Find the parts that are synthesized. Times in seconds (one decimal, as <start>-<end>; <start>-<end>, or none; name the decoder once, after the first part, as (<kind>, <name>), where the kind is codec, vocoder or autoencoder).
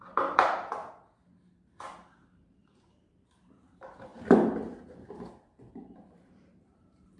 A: 0.0-0.8 (vocoder, BigVGAN v2); 2.1-7.2